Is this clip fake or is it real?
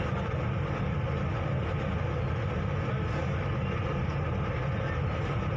real